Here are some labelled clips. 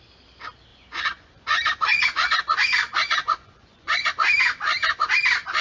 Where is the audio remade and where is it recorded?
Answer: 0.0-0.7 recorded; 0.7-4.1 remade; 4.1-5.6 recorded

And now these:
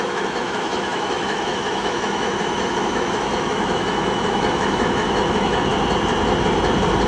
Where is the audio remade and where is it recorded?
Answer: 0.0-5.7 remade; 5.7-7.1 recorded

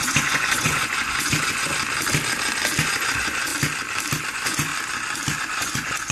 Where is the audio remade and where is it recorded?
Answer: 0.0-1.7 remade; 1.7-2.8 recorded; 2.8-3.5 remade; 3.5-4.3 recorded; 4.3-4.7 remade; 4.7-5.4 recorded; 5.4-6.1 remade

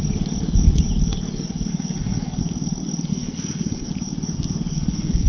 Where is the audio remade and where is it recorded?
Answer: 0.0-1.7 recorded; 1.7-2.4 remade; 2.4-3.1 recorded; 3.1-3.9 remade; 3.9-4.7 recorded; 4.7-5.3 remade